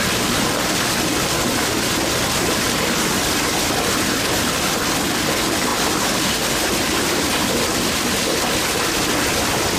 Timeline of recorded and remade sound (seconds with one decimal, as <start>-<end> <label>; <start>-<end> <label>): 0.0-9.8 recorded